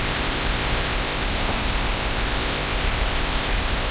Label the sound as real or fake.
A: fake